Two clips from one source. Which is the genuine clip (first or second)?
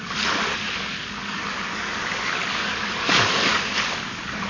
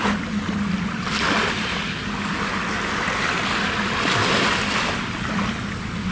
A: second